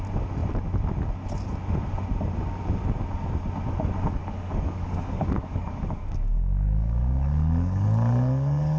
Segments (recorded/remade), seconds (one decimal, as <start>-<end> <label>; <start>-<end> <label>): 0.0-4.2 recorded; 4.2-8.8 remade